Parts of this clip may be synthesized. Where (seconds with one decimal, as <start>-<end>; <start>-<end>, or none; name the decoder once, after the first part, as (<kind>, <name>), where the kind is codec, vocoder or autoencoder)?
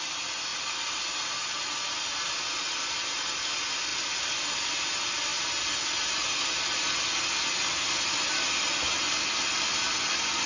none